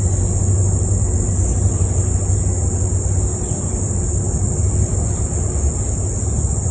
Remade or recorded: recorded